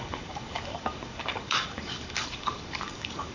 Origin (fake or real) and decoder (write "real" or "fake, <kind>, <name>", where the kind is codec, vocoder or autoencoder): fake, codec, DAC